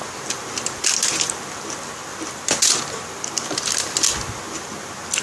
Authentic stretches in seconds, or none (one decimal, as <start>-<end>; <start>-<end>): 0.0-5.2